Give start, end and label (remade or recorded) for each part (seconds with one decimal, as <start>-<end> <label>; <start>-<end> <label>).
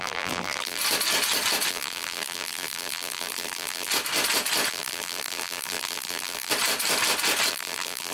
0.0-0.8 remade; 0.8-1.7 recorded; 1.7-3.9 remade; 3.9-4.7 recorded; 4.7-6.5 remade; 6.5-7.5 recorded; 7.5-8.1 remade